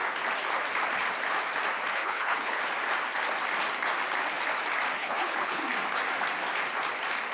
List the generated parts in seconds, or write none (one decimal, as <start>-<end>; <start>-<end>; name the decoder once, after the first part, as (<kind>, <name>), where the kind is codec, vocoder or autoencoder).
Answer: 1.9-2.6 (codec, HILCodec); 5.0-5.6